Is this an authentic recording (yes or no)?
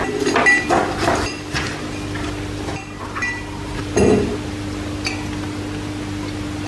yes